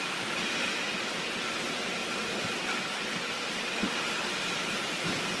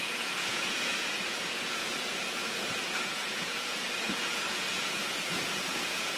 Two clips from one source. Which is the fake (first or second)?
second